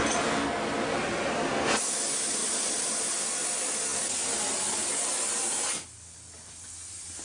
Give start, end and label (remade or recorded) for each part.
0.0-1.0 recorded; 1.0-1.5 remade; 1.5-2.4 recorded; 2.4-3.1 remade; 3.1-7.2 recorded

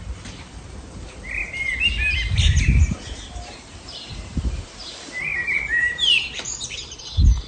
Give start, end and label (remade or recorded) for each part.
0.0-1.4 remade; 1.4-2.6 recorded; 2.6-7.5 remade

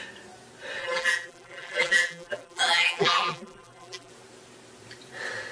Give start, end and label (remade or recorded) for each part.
0.0-0.8 recorded; 0.8-4.1 remade; 4.1-5.5 recorded

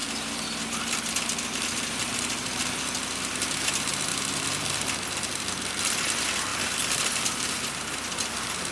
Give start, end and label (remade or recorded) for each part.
0.0-1.1 remade; 1.1-4.1 recorded; 4.1-5.5 remade; 5.5-6.5 recorded; 6.5-7.7 remade; 7.7-8.7 recorded

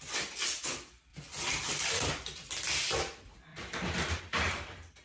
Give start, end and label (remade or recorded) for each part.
0.0-1.1 recorded; 1.1-2.1 remade; 2.1-3.5 recorded; 3.5-4.2 remade; 4.2-5.0 recorded

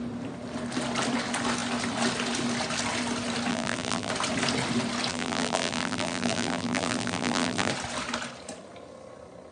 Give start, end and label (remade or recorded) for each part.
0.0-3.5 recorded; 3.5-4.1 remade; 4.1-5.1 recorded; 5.1-7.7 remade; 7.7-9.5 recorded

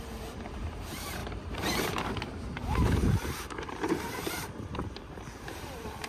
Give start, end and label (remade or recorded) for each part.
0.0-6.1 remade